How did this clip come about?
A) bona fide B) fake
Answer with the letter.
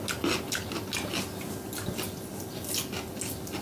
A